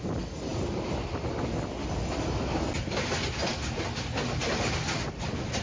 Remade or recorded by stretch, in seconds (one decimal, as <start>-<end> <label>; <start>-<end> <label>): 0.0-5.6 recorded